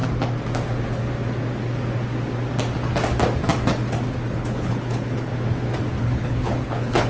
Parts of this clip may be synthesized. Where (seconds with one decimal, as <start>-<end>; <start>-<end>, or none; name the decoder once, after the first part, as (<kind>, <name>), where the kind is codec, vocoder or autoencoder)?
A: 4.3-5.3 (codec, HILCodec); 6.0-7.1